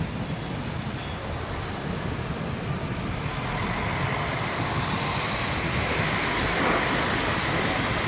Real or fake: real